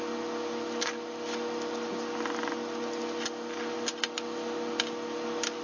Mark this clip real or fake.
real